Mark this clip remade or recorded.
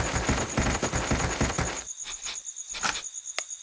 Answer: recorded